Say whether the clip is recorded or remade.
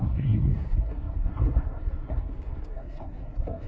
remade